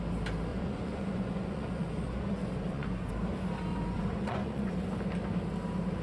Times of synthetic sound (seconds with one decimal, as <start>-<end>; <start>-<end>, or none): 0.5-3.1; 3.7-4.7